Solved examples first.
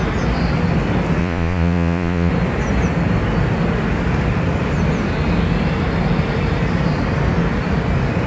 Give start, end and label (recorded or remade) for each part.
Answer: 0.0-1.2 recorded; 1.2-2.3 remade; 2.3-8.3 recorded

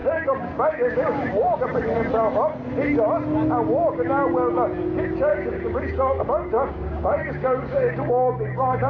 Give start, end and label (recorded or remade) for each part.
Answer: 0.0-1.6 remade; 1.6-5.3 recorded; 5.3-8.9 remade